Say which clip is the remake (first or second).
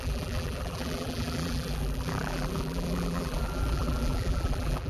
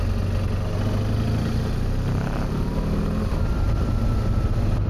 first